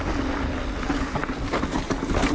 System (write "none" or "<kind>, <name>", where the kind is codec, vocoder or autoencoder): none